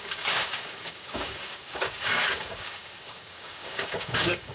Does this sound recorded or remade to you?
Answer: remade